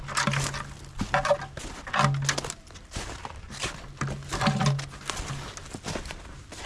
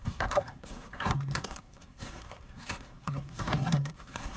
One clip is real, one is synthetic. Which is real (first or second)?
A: first